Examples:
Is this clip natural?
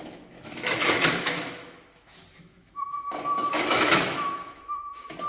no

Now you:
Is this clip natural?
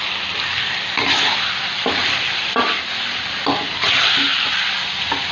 yes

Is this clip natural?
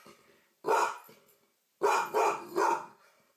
yes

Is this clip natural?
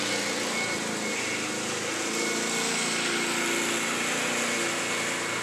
yes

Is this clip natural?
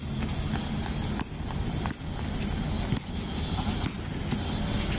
yes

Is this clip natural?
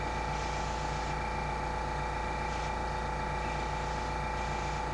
yes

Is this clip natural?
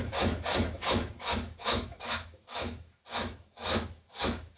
no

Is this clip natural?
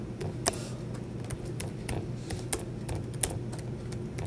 yes